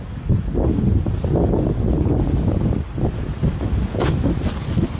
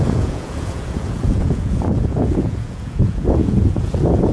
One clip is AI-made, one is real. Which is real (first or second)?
first